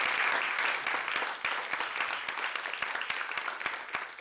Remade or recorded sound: recorded